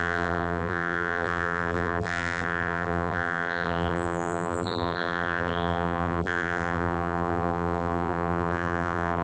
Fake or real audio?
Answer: fake